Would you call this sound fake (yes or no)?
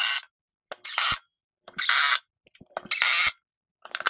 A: no